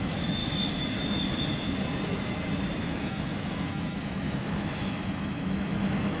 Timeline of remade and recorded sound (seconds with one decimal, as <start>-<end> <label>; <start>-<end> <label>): 0.0-0.4 remade; 0.4-2.8 recorded; 2.8-6.2 remade